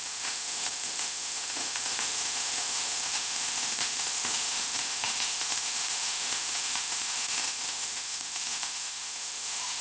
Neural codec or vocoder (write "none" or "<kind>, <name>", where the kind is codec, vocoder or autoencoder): autoencoder, DAC-VAE